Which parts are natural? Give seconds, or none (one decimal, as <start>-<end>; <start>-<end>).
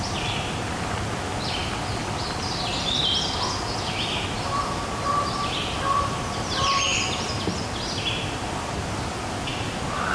0.0-10.1